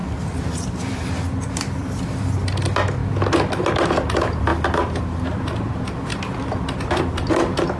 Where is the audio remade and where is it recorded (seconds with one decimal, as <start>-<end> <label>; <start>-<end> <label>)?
0.0-3.0 remade; 3.0-3.7 recorded; 3.7-4.5 remade; 4.5-5.0 recorded; 5.0-7.8 remade

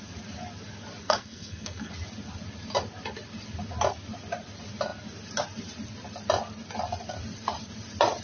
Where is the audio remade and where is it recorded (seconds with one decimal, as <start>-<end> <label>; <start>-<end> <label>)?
0.0-1.0 recorded; 1.0-1.9 remade; 1.9-8.2 recorded

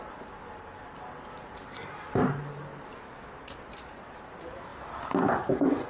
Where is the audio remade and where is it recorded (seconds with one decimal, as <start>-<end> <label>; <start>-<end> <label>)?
0.0-5.9 recorded

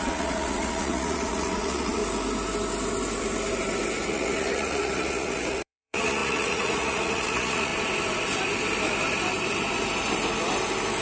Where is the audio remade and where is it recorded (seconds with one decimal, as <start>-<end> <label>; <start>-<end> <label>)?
0.0-2.0 remade; 2.0-4.1 recorded; 4.1-7.7 remade; 7.7-11.0 recorded